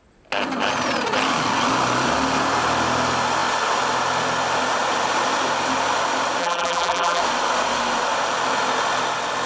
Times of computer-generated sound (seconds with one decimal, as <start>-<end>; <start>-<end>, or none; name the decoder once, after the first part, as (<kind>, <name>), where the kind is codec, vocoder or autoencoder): 6.4-7.2 (vocoder, BigVGAN v2)